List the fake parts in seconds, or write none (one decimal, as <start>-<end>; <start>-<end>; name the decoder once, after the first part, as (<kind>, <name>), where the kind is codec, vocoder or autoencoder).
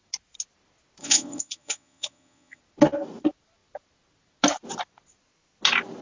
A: 1.0-2.6 (vocoder, Vocos)